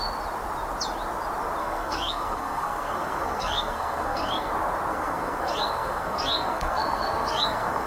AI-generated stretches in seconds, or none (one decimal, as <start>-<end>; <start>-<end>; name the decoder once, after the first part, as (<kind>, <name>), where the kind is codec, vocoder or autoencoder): 1.6-4.5 (codec, SNAC); 4.9-7.9